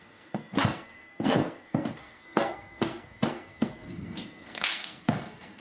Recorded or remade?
remade